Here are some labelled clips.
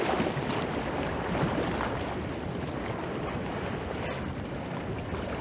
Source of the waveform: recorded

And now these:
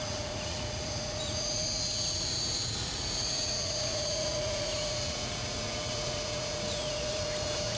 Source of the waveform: remade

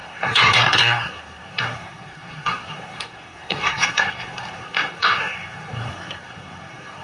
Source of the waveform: remade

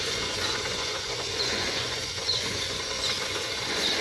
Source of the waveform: remade